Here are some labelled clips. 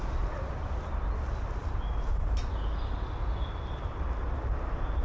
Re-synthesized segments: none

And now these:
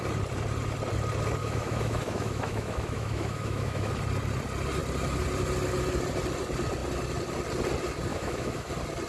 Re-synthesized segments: 1.4-3.9 (autoencoder, DAC-VAE); 8.1-8.7

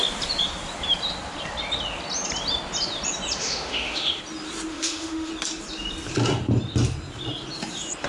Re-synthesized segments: 3.4-4.2 (autoencoder, DAC-VAE); 4.7-5.3